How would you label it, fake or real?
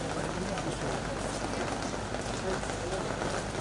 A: real